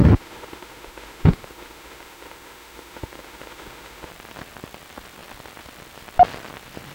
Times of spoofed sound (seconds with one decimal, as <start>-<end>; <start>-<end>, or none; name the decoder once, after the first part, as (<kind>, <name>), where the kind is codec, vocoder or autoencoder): 0.0-4.1 (autoencoder, DAC-VAE)